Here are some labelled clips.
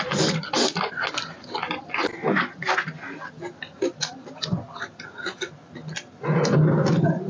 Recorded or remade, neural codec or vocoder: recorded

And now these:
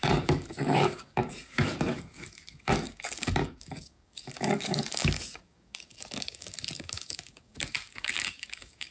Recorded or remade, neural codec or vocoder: remade, codec, DAC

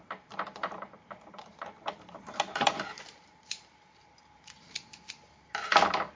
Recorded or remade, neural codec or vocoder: remade, vocoder, BigVGAN v2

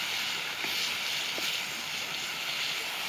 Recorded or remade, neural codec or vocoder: recorded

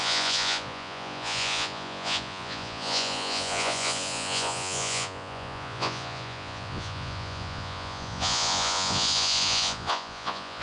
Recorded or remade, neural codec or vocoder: remade, vocoder, Vocos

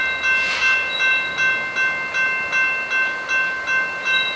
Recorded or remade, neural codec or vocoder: recorded